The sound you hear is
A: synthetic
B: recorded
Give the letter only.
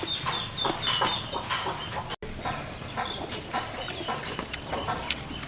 B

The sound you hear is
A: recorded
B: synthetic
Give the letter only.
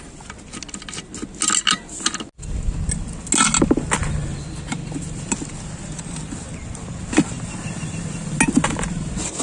A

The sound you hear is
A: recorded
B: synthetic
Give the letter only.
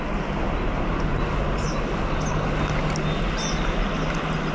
A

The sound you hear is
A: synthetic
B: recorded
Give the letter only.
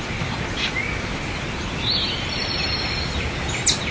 B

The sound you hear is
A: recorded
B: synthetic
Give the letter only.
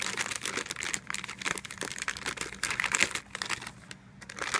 A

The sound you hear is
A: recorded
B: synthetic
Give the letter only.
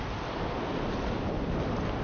A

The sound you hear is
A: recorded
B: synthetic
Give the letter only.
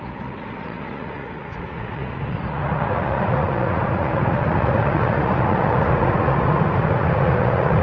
B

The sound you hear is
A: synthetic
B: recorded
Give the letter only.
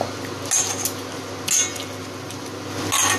B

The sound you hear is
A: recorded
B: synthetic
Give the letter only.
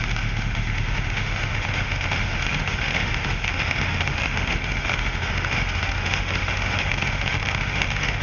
B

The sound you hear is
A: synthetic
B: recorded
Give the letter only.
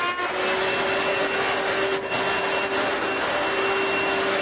B